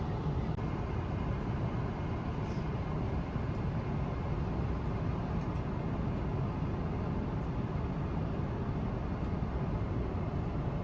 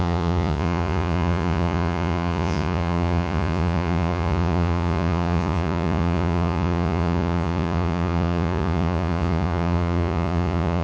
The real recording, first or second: first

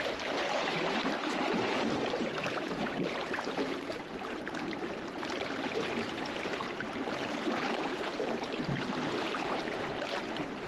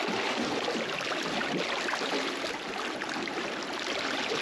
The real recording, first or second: second